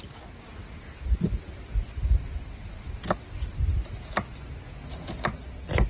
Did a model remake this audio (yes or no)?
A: no